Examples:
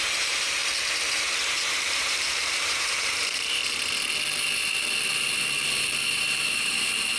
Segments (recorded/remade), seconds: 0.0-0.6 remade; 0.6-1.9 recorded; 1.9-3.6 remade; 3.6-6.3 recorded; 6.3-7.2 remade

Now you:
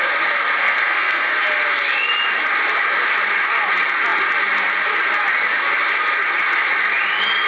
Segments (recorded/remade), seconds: 0.0-0.6 recorded; 0.6-1.3 remade; 1.3-7.5 recorded

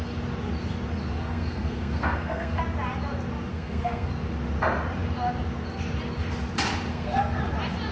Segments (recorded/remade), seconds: 0.0-1.2 recorded; 1.2-2.6 remade; 2.6-3.5 recorded; 3.5-4.1 remade; 4.1-6.9 recorded; 6.9-7.4 remade; 7.4-7.9 recorded

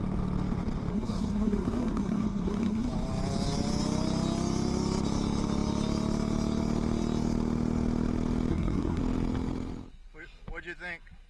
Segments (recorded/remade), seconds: 0.0-0.9 recorded; 0.9-2.9 remade; 2.9-8.5 recorded; 8.5-9.0 remade; 9.0-11.3 recorded